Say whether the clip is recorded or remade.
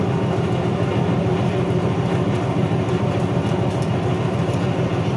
recorded